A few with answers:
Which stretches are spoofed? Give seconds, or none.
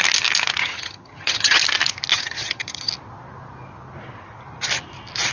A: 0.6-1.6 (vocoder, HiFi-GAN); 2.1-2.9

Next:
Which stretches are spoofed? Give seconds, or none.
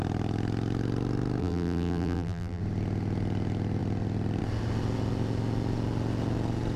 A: 1.4-2.6 (vocoder, BigVGAN v2)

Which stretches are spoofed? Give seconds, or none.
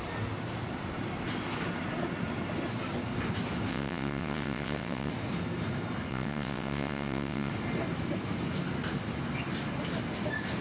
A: 3.7-5.1 (vocoder, WaveNeXt); 6.1-7.5